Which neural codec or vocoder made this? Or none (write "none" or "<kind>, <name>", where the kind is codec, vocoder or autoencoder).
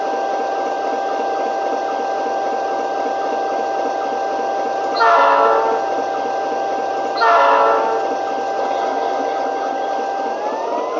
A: none